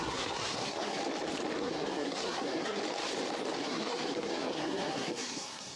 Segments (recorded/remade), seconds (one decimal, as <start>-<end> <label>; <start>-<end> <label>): 0.0-1.0 remade; 1.0-1.6 recorded; 1.6-2.8 remade; 2.8-3.6 recorded; 3.6-5.8 remade